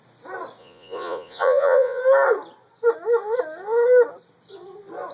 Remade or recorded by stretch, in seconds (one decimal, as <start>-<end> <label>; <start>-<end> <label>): 0.0-0.6 recorded; 0.6-2.0 remade; 2.0-5.1 recorded